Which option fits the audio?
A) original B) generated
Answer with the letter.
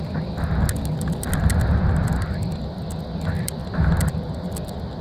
A